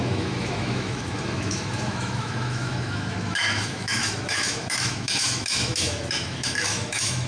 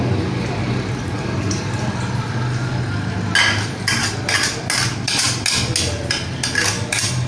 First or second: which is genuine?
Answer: second